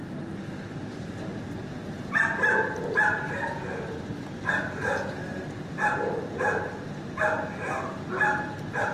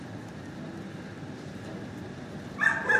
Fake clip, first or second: second